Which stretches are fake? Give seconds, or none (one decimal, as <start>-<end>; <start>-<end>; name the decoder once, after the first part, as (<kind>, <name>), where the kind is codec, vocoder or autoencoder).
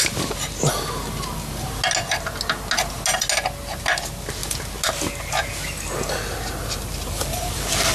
none